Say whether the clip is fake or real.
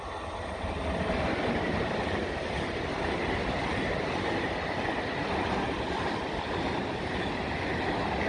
real